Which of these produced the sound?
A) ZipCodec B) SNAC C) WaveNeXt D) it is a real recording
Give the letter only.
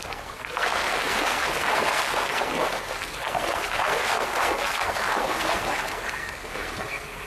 B